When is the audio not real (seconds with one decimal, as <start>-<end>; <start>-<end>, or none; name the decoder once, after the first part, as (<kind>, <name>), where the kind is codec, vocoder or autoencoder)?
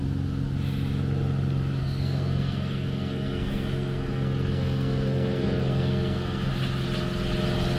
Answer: 1.8-6.5 (codec, SNAC)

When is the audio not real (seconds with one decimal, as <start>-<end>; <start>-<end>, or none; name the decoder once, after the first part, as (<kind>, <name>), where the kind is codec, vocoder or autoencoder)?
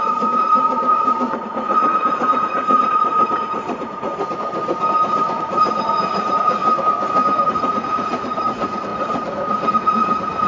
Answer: 0.0-4.1 (vocoder, Vocos); 5.1-6.6; 7.4-10.5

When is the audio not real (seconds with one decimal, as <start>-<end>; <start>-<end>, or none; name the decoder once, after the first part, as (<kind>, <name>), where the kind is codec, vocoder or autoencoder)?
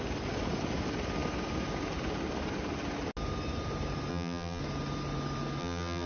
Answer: 4.1-4.6 (vocoder, BigVGAN v2); 5.6-6.1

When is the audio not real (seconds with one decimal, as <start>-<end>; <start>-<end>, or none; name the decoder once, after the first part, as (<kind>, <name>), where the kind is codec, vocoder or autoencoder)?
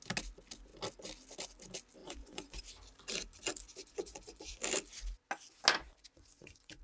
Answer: 2.0-2.6 (vocoder, Vocos); 3.8-4.5; 5.7-6.8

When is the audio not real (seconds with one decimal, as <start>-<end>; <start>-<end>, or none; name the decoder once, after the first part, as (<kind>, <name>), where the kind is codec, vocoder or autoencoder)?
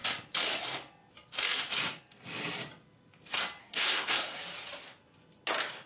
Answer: 3.6-4.4 (codec, SNAC)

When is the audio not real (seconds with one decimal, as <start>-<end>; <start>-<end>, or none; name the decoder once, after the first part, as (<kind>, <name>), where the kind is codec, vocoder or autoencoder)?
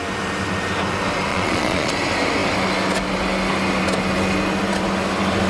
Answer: 1.3-1.9 (vocoder, Vocos)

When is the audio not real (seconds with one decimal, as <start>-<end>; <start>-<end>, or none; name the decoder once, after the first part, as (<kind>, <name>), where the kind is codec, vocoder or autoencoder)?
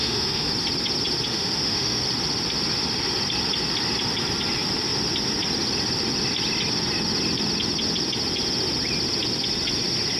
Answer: 0.0-0.5 (autoencoder, DAC-VAE); 1.3-2.0